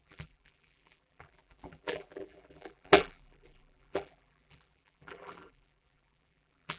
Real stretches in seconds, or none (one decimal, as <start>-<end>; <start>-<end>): none